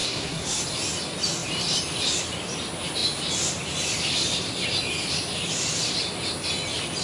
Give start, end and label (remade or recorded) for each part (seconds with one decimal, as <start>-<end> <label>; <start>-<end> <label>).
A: 0.0-0.6 remade; 0.6-7.0 recorded